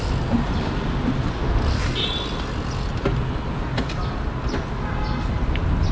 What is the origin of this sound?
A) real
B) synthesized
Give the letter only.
A